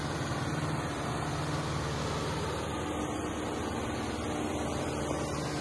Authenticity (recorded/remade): recorded